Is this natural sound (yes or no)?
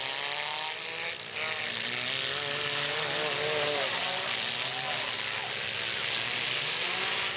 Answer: yes